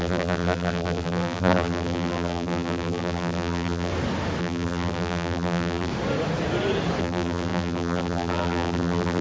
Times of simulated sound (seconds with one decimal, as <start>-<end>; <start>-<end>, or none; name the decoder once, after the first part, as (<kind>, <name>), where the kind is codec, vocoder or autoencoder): 0.0-3.9 (vocoder, BigVGAN v2); 4.4-5.9; 7.0-9.2